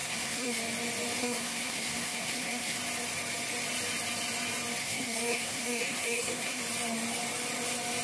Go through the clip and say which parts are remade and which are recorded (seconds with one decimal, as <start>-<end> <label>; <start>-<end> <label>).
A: 0.0-0.6 remade; 0.6-1.2 recorded; 1.2-2.8 remade; 2.8-4.8 recorded; 4.8-6.6 remade; 6.6-8.0 recorded